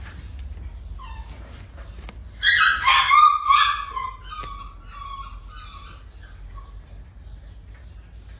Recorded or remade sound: recorded